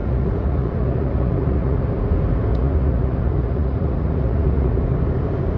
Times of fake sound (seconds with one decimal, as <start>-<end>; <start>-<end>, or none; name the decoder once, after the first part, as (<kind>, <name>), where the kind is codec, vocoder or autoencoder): 0.0-1.8 (vocoder, Vocos); 2.5-4.8